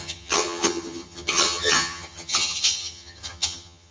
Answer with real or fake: fake